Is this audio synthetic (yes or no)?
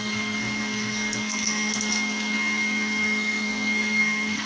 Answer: yes